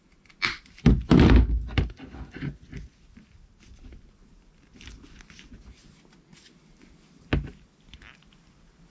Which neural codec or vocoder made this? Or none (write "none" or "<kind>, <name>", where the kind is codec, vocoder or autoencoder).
none